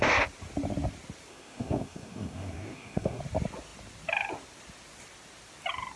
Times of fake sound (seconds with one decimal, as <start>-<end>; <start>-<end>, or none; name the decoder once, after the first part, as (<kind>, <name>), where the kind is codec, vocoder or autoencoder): 1.3-3.2 (codec, SNAC)